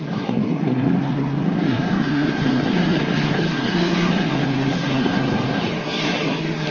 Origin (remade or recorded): remade